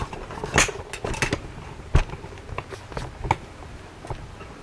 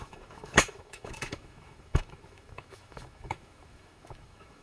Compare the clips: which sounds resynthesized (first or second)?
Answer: second